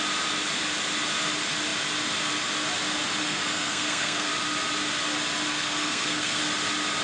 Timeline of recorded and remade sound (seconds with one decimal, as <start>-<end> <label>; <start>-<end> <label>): 0.0-3.2 recorded; 3.2-4.3 remade; 4.3-5.5 recorded; 5.5-6.4 remade; 6.4-7.0 recorded